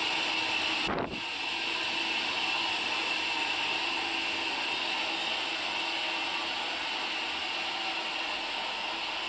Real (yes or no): yes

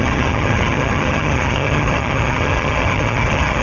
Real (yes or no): no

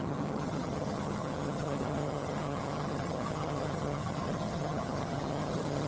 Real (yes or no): no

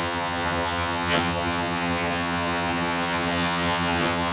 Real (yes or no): no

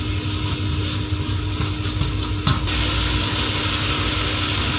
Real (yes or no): yes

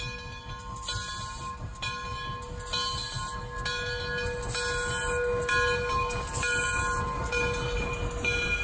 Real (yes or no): yes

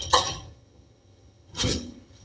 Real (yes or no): no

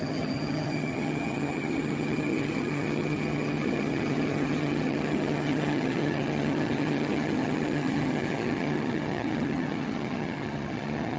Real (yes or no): no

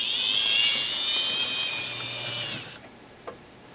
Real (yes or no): yes